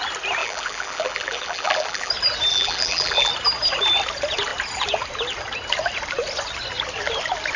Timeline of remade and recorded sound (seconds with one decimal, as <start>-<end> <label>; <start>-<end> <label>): 0.0-0.4 recorded; 0.4-2.1 remade; 2.1-2.5 recorded; 2.5-3.3 remade; 3.3-7.6 recorded